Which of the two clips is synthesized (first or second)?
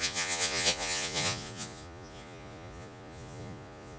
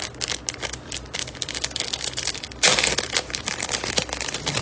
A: first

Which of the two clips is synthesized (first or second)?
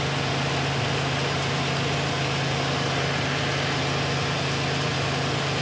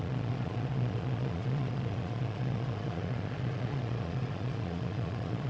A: second